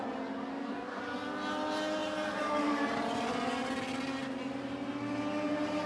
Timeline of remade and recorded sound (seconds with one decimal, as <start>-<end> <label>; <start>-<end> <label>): 0.0-0.5 recorded; 0.5-1.0 remade; 1.0-5.9 recorded